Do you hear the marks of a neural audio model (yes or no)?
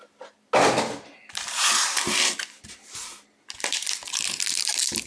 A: no